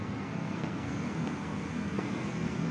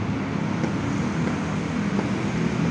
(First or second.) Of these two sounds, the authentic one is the second